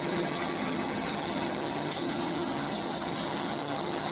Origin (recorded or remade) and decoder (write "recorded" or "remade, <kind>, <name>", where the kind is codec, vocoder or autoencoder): remade, vocoder, HiFi-GAN